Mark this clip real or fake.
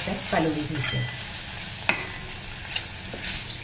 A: real